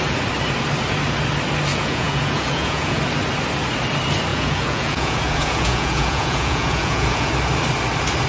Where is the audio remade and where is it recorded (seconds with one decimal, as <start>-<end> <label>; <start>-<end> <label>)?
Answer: 0.0-1.7 recorded; 1.7-3.0 remade; 3.0-4.3 recorded; 4.3-7.3 remade; 7.3-8.3 recorded